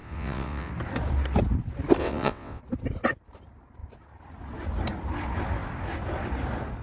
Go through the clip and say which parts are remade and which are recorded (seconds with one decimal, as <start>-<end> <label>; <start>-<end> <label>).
0.0-0.7 remade; 0.7-2.0 recorded; 2.0-2.6 remade; 2.6-6.8 recorded

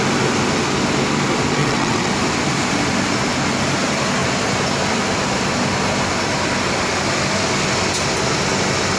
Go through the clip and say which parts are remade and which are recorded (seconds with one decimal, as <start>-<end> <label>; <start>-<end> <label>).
0.0-1.6 recorded; 1.6-2.1 remade; 2.1-9.0 recorded

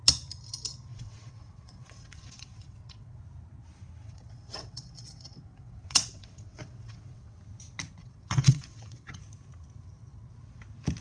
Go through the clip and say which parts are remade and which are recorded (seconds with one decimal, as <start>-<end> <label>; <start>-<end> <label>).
0.0-0.9 recorded; 0.9-3.2 remade; 3.2-4.0 recorded; 4.0-7.4 remade; 7.4-8.0 recorded; 8.0-9.2 remade; 9.2-11.0 recorded